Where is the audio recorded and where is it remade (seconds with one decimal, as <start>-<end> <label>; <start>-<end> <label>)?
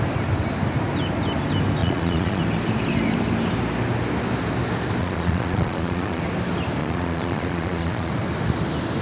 0.0-1.8 recorded; 1.8-2.4 remade; 2.4-5.0 recorded; 5.0-6.2 remade; 6.2-6.8 recorded; 6.8-8.1 remade; 8.1-9.0 recorded